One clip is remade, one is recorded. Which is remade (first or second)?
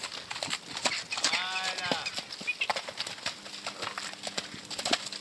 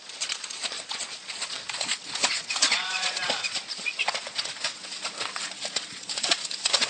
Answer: second